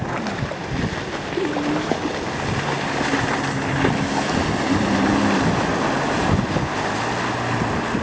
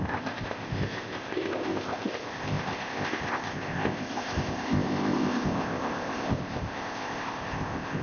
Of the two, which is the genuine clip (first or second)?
first